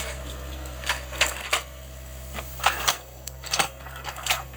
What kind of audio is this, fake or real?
fake